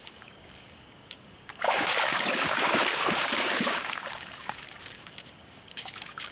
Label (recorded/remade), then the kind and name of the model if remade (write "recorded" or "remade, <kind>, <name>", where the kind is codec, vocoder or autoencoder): remade, codec, DAC